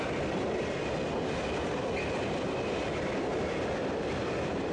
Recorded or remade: recorded